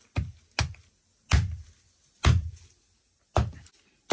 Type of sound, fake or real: real